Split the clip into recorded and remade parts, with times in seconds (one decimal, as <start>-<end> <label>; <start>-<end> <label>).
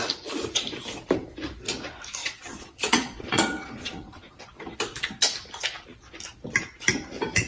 0.0-2.2 recorded; 2.2-4.4 remade; 4.4-7.5 recorded